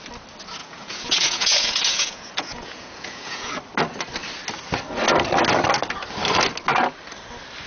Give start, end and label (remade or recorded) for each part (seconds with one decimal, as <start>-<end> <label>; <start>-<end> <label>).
0.0-0.6 recorded; 0.6-3.5 remade; 3.5-7.7 recorded